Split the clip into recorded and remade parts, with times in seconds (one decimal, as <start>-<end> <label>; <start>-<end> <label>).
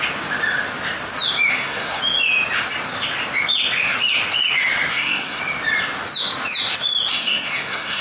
0.0-1.5 recorded; 1.5-2.0 remade; 2.0-4.9 recorded; 4.9-5.4 remade; 5.4-7.1 recorded; 7.1-8.0 remade